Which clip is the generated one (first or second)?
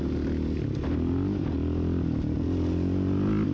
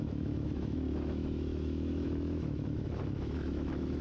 second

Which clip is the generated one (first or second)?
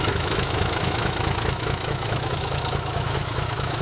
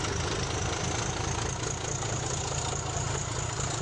first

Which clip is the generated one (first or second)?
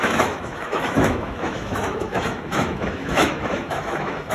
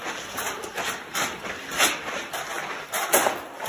first